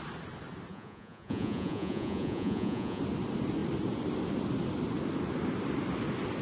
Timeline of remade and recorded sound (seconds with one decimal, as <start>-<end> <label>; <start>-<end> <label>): 0.0-0.7 recorded; 0.7-3.0 remade; 3.0-6.4 recorded